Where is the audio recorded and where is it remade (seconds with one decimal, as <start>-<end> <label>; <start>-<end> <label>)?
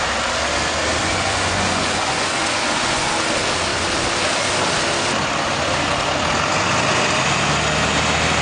0.0-1.0 recorded; 1.0-3.1 remade; 3.1-8.4 recorded